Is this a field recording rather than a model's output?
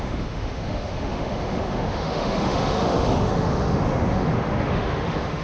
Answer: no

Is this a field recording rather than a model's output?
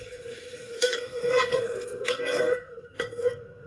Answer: no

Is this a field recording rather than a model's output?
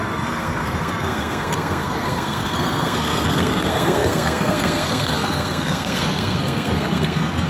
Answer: no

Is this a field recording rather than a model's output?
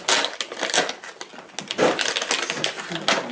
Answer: yes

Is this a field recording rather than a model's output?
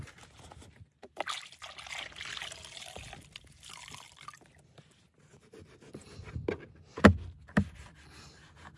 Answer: yes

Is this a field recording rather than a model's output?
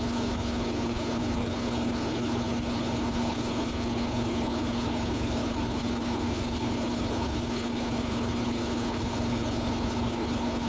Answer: no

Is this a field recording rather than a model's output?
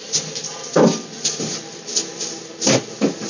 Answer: yes